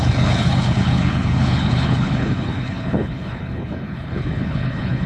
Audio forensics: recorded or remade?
remade